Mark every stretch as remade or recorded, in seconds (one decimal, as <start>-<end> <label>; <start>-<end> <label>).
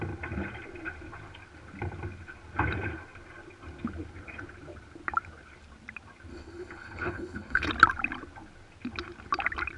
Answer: 0.0-6.3 recorded; 6.3-7.7 remade; 7.7-9.8 recorded